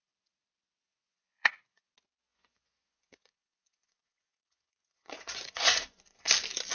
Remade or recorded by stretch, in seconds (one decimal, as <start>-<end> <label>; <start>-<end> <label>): 0.0-0.9 recorded; 0.9-1.9 remade; 1.9-2.3 recorded; 2.3-6.3 remade; 6.3-6.7 recorded

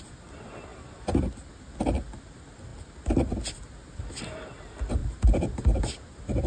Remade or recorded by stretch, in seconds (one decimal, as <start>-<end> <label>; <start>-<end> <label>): 0.0-5.0 recorded; 5.0-5.8 remade; 5.8-6.5 recorded

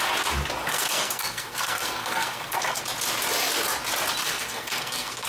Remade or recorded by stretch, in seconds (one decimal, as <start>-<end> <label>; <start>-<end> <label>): 0.0-0.6 recorded; 0.6-2.8 remade; 2.8-4.2 recorded; 4.2-5.3 remade

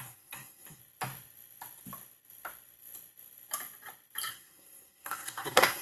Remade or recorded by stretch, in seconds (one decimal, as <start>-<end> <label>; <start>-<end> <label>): 0.0-0.8 remade; 0.8-4.3 recorded; 4.3-5.8 remade

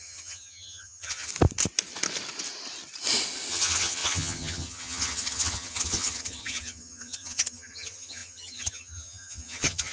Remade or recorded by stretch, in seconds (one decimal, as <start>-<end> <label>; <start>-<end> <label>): 0.0-1.3 remade; 1.3-3.5 recorded; 3.5-9.9 remade